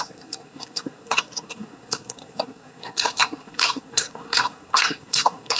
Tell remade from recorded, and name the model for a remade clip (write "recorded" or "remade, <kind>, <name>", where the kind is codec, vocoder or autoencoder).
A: remade, codec, SNAC